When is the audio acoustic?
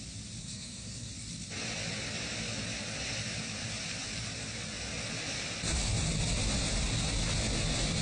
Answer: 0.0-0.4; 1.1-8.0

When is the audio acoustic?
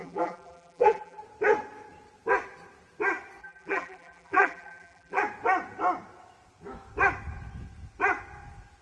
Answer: 1.2-3.4; 5.2-8.8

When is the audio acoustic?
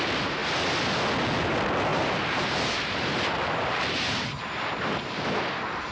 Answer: 0.0-1.9; 5.4-5.9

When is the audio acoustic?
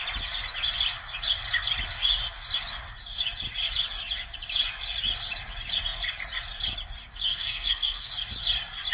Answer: 0.0-7.3; 8.1-8.9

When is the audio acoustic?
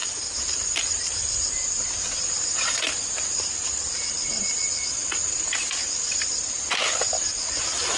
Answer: 1.5-3.5; 4.1-8.0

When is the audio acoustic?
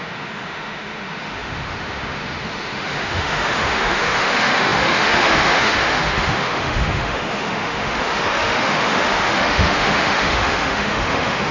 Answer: none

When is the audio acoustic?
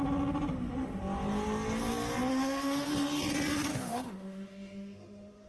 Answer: 0.0-2.3; 2.9-3.7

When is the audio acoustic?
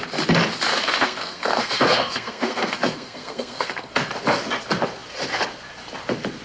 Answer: 0.0-0.7; 4.1-6.4